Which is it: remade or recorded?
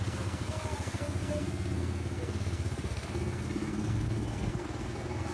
remade